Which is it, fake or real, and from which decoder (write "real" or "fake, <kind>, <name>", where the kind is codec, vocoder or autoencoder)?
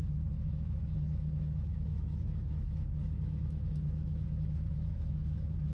fake, autoencoder, DAC-VAE